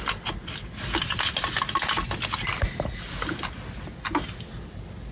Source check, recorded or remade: recorded